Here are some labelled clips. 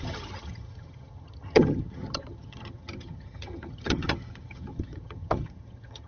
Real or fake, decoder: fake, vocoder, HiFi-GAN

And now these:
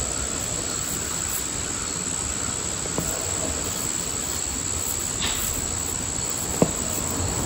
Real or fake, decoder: real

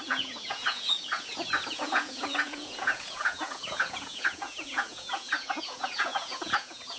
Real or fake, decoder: fake, vocoder, Vocos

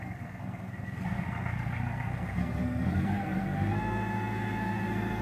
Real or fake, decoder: fake, codec, SNAC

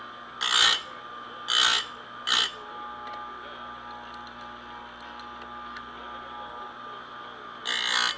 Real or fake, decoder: real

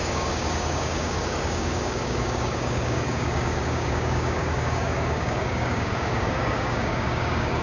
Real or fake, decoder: fake, codec, DAC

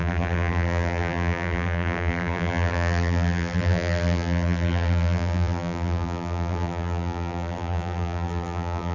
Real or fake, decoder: fake, vocoder, BigVGAN v2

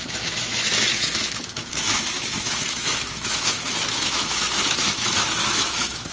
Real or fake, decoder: fake, autoencoder, DAC-VAE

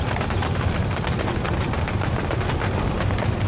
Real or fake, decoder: real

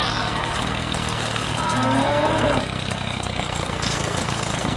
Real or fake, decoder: fake, codec, SNAC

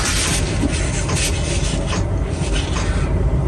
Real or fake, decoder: real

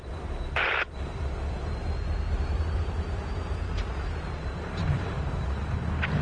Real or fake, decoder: fake, vocoder, BigVGAN v2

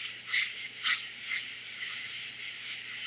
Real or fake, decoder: real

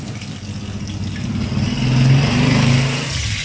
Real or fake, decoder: real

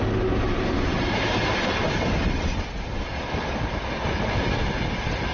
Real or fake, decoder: real